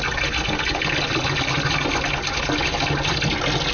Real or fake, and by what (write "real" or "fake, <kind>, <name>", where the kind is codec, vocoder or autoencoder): real